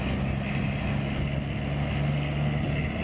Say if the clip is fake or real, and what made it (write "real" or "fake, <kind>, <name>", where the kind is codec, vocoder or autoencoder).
real